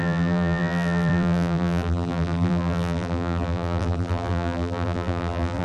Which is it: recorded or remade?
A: remade